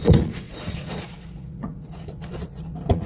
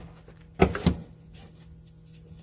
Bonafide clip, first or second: second